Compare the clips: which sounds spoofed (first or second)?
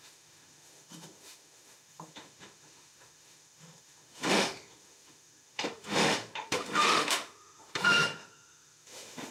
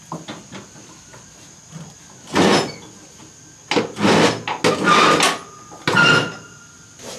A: first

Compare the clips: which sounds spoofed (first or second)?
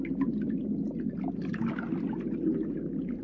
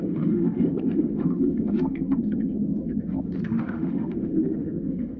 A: second